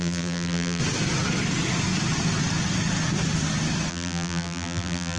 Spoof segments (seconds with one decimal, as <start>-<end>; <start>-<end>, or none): 0.0-0.8; 3.9-5.2